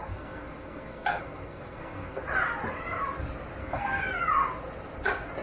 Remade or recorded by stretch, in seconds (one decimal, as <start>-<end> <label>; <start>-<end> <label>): 0.0-2.2 remade; 2.2-3.6 recorded; 3.6-4.2 remade; 4.2-5.4 recorded